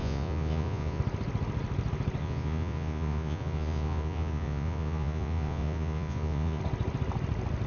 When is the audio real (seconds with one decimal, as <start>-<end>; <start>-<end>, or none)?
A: 1.0-2.2; 6.6-7.7